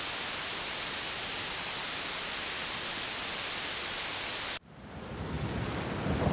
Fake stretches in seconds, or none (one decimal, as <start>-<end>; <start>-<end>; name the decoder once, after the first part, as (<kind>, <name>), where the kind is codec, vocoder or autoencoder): none